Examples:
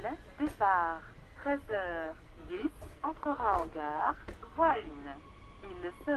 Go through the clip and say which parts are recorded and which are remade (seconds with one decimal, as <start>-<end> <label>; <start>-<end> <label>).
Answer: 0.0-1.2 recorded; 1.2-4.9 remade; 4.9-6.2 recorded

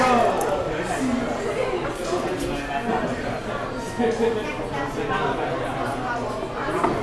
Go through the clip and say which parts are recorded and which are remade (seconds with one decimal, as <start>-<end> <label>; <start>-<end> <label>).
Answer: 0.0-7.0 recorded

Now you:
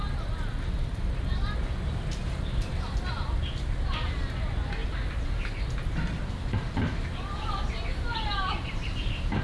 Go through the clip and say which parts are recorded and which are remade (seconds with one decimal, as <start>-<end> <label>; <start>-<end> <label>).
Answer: 0.0-4.8 recorded; 4.8-9.4 remade

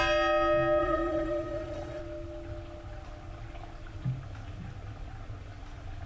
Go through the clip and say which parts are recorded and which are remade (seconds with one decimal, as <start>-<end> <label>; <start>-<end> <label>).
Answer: 0.0-0.8 recorded; 0.8-2.0 remade; 2.0-6.1 recorded